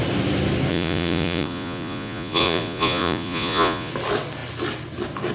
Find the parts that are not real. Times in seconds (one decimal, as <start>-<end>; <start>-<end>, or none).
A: 0.7-3.9